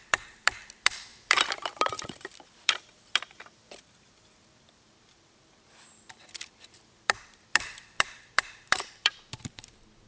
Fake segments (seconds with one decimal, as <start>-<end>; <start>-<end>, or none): 0.0-10.1